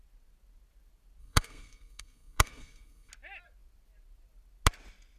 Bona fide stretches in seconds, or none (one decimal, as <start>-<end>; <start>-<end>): 0.0-1.2; 3.1-5.2